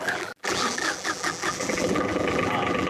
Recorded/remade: remade